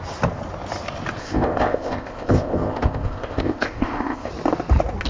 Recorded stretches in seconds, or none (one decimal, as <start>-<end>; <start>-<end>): 0.0-1.2; 4.3-5.1